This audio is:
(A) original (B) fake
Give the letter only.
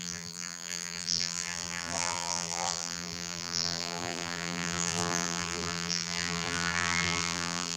B